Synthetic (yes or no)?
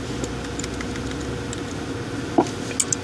no